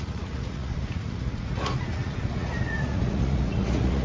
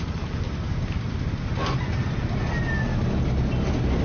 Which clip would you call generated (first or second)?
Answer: first